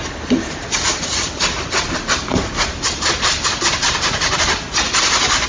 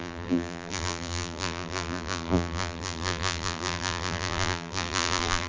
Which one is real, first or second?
first